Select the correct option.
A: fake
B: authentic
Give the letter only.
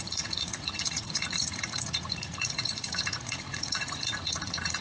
A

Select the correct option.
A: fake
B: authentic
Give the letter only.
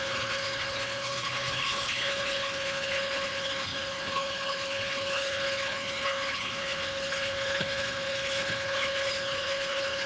A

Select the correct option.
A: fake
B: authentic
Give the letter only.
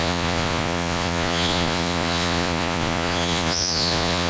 A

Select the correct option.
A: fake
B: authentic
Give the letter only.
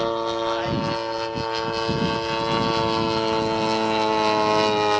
B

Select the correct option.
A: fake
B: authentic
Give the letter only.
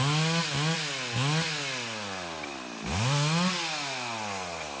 B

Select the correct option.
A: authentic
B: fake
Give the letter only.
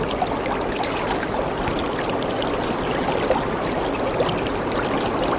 A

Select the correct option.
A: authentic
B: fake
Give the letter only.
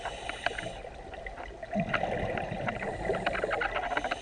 A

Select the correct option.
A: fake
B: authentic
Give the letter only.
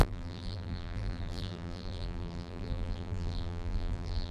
A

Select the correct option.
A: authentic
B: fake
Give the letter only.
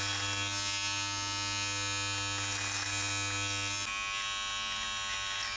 A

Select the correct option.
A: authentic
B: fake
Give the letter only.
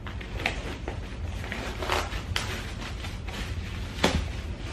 B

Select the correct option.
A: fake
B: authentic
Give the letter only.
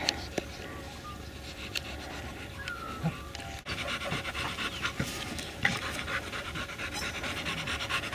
B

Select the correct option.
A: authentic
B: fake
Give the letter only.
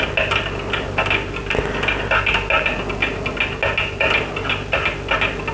A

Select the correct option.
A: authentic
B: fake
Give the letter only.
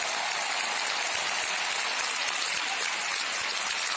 A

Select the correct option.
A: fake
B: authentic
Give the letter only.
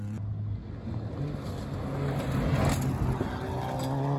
B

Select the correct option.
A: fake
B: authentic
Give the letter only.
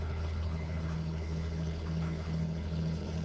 A